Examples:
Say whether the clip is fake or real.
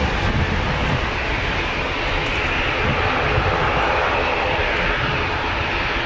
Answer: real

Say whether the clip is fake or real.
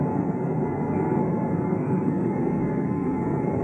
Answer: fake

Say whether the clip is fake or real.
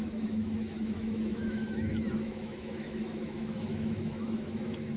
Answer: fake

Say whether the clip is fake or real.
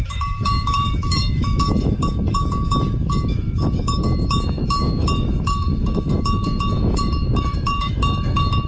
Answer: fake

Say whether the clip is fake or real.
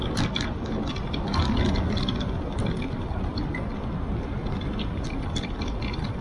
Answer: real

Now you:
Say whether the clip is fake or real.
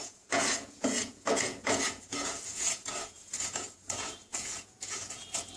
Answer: fake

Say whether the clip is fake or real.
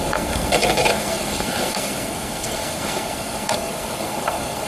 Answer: fake